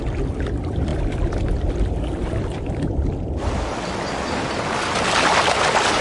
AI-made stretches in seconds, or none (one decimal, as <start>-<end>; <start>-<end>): 0.9-4.5